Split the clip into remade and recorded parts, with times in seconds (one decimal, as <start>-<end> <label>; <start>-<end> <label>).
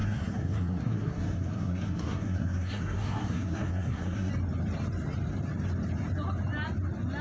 0.0-4.3 remade; 4.3-7.2 recorded